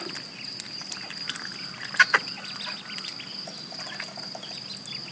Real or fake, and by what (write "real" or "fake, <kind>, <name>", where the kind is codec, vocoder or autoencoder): real